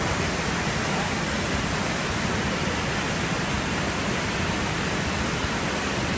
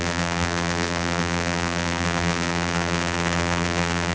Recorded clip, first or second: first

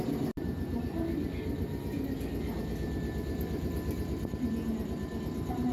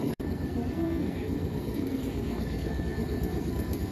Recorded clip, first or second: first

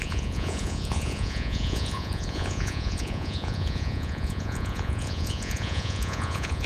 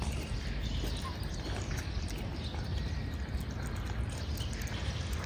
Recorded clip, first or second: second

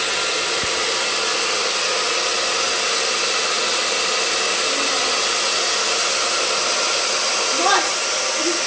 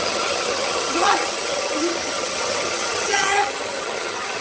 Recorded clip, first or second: first